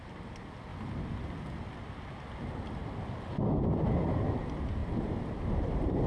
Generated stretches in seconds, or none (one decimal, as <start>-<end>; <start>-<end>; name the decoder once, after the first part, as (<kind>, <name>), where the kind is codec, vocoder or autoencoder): 4.8-6.1 (vocoder, BigVGAN v2)